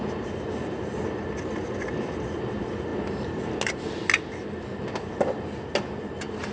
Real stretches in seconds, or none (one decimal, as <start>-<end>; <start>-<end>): 0.0-6.5